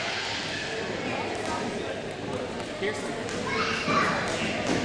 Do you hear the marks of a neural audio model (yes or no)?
no